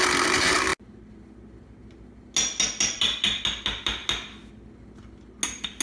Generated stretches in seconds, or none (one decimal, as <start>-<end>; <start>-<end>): none